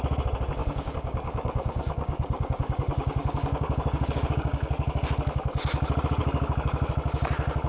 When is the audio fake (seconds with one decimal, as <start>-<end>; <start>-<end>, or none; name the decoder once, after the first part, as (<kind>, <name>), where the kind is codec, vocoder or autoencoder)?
0.6-4.7 (codec, DAC); 6.2-6.9